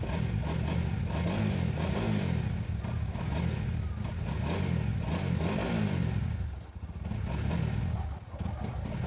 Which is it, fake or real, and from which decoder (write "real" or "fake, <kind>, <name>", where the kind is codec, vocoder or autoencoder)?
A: real